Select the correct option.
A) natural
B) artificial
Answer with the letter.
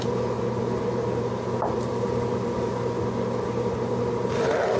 A